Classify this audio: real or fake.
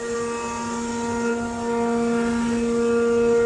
real